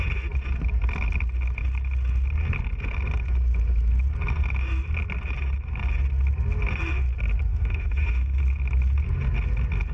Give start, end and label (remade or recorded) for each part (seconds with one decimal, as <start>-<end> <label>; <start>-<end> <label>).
0.0-7.5 recorded; 7.5-8.4 remade; 8.4-9.9 recorded